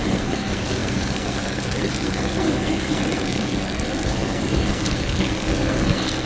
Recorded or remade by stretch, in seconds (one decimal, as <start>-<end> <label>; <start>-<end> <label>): 0.0-6.3 remade